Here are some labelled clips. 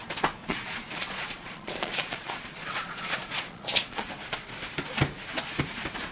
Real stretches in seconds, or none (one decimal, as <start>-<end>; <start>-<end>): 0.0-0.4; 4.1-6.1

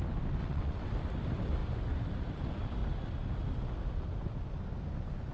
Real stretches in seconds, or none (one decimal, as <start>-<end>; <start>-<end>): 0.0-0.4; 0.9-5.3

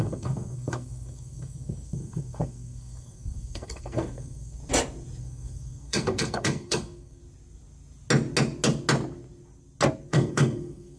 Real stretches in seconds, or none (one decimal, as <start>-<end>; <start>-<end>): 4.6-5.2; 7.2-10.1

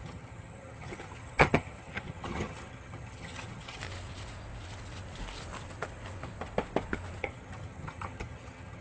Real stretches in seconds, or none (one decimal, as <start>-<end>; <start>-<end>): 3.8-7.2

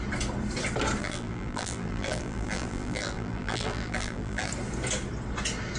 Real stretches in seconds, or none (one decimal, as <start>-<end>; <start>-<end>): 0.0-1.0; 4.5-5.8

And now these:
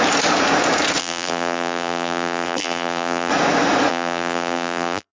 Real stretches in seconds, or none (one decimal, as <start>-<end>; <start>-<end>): 0.0-1.0; 3.3-3.9

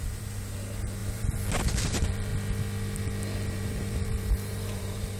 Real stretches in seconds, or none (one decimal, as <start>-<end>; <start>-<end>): 2.3-3.5